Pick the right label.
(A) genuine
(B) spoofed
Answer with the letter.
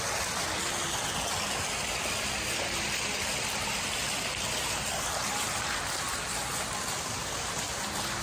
A